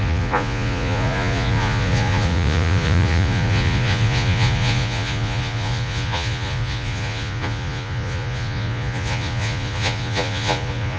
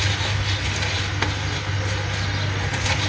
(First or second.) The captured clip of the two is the second